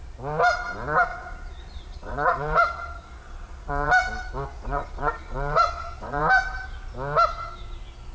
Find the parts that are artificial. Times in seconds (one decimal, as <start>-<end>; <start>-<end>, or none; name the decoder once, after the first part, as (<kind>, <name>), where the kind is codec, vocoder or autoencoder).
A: 1.1-3.9 (vocoder, Vocos); 4.5-6.2